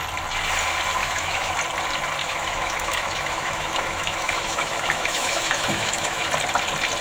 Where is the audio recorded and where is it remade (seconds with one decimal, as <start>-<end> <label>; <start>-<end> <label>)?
0.0-1.0 recorded; 1.0-1.5 remade; 1.5-2.2 recorded; 2.2-6.3 remade; 6.3-7.0 recorded